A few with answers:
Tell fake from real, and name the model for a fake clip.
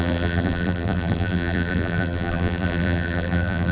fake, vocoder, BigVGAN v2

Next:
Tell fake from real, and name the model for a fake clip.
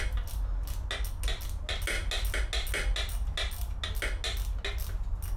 real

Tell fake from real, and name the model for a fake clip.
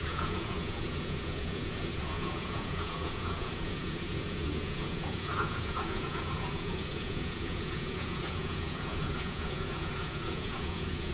fake, vocoder, Vocos